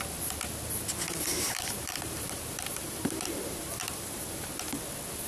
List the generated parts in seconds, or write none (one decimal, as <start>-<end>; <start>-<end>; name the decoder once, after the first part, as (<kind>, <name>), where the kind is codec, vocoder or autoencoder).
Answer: 1.3-4.5 (vocoder, BigVGAN v2)